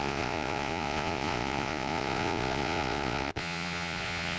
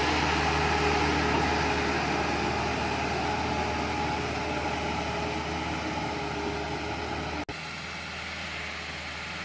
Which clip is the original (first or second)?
second